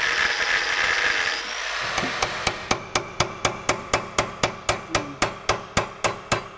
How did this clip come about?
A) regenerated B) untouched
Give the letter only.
B